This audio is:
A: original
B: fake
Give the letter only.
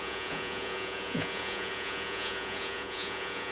B